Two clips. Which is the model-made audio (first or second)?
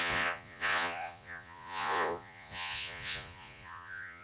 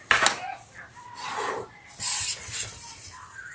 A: first